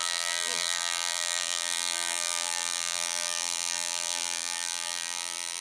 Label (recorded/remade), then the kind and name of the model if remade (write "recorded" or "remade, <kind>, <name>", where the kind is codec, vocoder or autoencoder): remade, vocoder, BigVGAN v2